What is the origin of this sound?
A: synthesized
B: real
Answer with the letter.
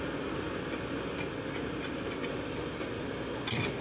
B